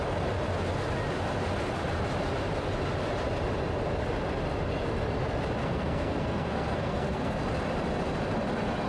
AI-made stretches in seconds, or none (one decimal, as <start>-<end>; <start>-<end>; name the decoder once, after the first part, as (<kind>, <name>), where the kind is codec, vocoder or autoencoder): 5.6-7.4 (codec, SNAC)